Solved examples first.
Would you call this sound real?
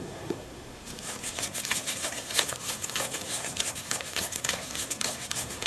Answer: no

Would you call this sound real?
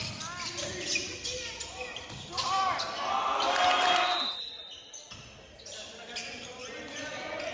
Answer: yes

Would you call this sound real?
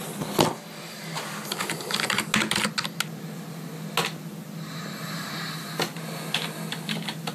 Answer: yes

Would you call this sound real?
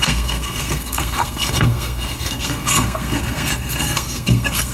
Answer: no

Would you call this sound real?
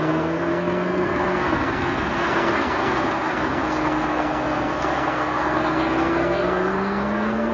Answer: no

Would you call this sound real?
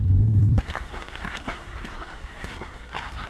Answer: no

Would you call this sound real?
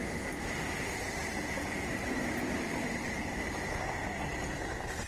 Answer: yes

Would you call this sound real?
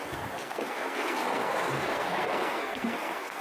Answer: no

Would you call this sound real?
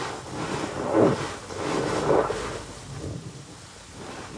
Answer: yes